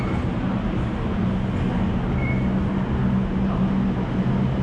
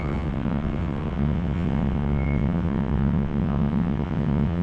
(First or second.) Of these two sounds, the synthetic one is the second